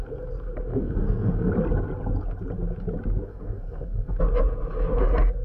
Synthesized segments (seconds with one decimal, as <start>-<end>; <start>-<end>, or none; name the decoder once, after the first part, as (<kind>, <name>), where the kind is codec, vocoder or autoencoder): 0.7-1.5 (codec, SNAC); 3.3-4.2